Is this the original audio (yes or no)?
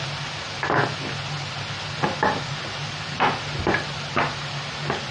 yes